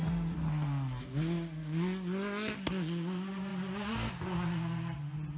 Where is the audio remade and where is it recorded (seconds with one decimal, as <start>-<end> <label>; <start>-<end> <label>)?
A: 0.0-5.4 recorded